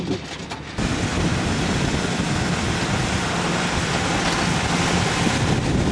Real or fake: real